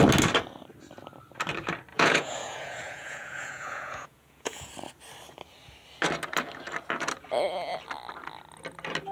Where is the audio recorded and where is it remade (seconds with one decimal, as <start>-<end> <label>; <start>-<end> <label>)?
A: 0.0-1.9 recorded; 1.9-4.7 remade; 4.7-9.1 recorded